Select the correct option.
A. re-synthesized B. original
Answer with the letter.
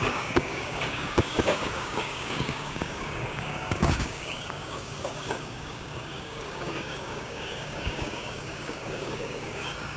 A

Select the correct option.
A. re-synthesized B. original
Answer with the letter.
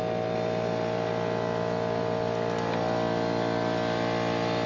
B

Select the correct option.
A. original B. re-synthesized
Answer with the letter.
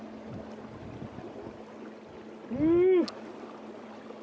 A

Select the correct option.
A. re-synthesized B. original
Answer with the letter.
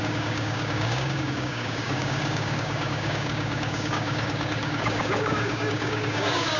A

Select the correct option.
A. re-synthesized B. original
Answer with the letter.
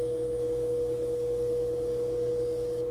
A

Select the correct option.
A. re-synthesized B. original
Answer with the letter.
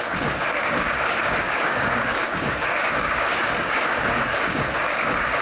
A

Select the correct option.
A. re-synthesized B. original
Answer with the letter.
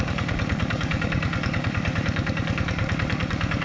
A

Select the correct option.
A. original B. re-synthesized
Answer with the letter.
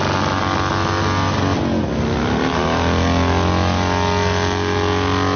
A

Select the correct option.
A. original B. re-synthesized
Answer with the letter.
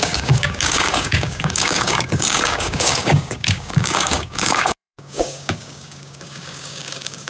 B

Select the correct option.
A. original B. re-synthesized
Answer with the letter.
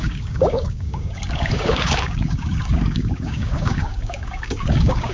B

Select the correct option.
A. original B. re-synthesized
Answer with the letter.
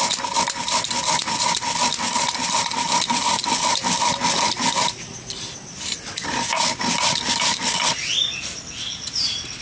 A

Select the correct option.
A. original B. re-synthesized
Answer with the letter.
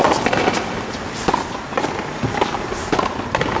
A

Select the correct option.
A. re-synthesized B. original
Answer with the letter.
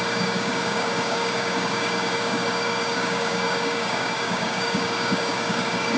A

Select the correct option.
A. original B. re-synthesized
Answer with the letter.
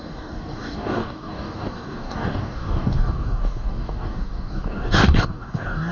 B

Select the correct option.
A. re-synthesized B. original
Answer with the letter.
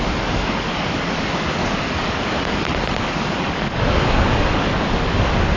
A